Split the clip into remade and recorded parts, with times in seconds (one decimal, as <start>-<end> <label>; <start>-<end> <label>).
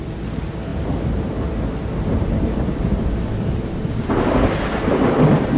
0.0-5.6 recorded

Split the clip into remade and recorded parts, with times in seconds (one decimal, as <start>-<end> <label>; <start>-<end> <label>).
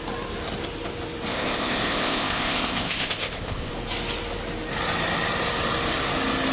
0.0-1.3 recorded; 1.3-3.7 remade; 3.7-6.5 recorded